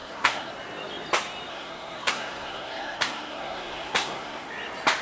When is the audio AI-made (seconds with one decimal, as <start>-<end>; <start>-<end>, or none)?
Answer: 0.0-0.5; 1.5-4.5